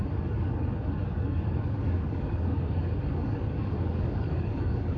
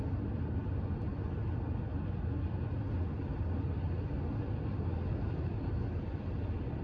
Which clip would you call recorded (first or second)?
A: second